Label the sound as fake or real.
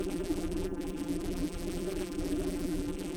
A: fake